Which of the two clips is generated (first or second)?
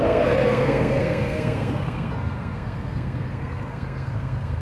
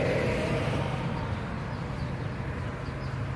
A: first